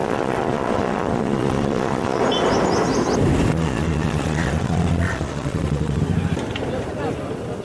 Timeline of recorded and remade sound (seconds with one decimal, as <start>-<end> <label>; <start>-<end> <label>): 0.0-2.2 remade; 2.2-3.5 recorded; 3.5-6.0 remade; 6.0-7.6 recorded